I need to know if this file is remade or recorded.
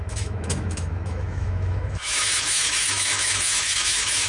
remade